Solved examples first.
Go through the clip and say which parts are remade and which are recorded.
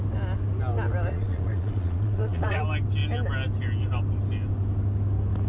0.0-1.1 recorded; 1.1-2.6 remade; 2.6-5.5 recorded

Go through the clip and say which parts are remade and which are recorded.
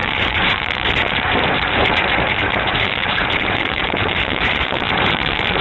0.0-5.6 remade